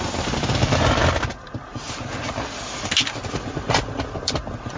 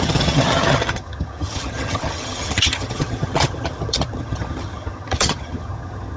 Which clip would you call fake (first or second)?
second